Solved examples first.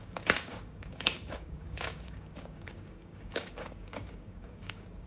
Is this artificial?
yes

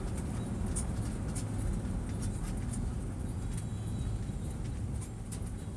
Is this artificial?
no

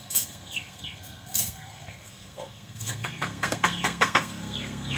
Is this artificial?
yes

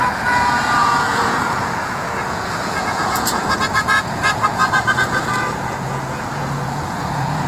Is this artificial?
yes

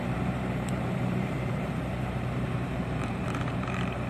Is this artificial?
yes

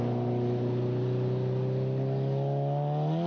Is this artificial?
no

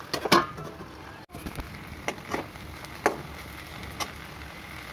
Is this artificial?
no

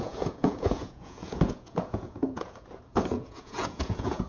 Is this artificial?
yes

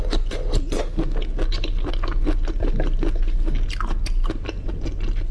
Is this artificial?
no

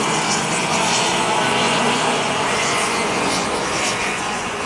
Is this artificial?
yes